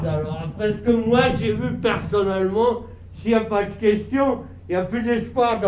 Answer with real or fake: real